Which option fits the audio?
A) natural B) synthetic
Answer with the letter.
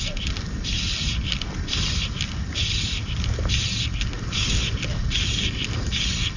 A